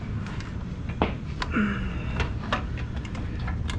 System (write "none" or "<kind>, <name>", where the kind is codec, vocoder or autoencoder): none